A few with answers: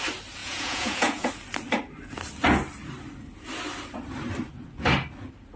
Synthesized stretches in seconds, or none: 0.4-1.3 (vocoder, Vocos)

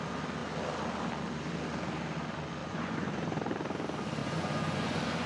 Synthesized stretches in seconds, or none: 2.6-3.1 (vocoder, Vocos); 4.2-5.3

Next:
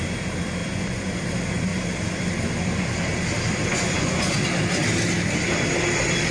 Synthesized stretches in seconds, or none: 0.6-1.2 (vocoder, Vocos); 3.7-4.3

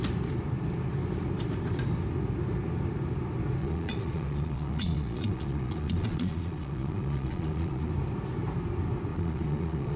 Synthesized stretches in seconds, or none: 3.6-7.9 (vocoder, Vocos); 9.1-10.0

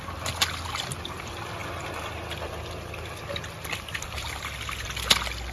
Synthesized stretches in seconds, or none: none

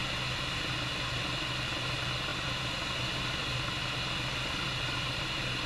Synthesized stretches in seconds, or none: none

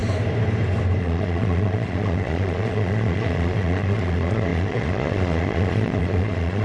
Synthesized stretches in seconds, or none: 1.0-6.6 (vocoder, Vocos)